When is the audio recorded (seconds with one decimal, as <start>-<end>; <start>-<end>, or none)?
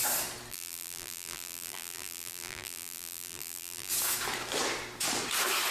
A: 0.0-0.5; 3.9-5.7